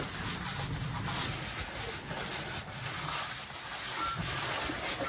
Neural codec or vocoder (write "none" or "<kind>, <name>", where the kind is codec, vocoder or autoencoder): none